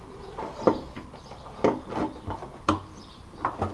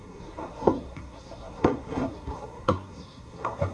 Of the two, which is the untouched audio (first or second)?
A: first